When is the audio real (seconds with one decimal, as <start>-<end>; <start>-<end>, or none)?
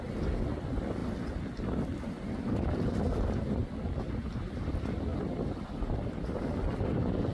0.0-7.3